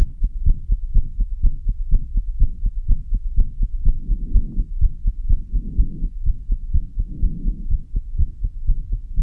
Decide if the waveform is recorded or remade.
recorded